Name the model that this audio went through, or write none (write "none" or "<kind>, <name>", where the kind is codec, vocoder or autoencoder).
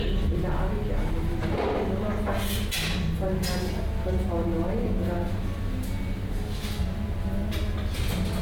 none